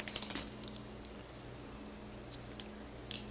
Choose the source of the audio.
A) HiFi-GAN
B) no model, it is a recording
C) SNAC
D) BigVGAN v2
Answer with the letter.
B